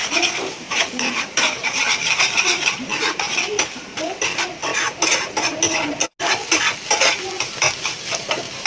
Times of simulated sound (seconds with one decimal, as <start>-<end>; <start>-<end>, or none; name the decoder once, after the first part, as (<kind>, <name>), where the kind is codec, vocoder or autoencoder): 0.0-4.6 (vocoder, BigVGAN v2); 7.9-8.7

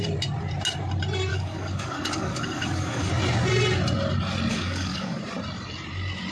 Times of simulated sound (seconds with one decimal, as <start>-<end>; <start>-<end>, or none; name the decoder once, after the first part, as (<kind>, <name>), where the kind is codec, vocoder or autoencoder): 1.3-3.1 (codec, DAC); 4.5-5.2